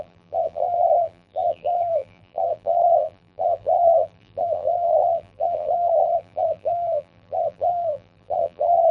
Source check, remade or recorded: remade